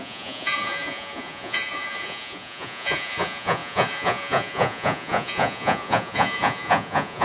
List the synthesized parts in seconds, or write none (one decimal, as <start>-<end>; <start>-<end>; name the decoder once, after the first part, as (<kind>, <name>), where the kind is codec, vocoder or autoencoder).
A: 0.0-7.2 (vocoder, Vocos)